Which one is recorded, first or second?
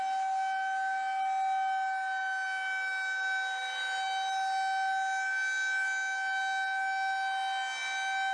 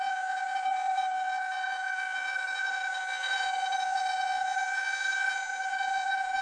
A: first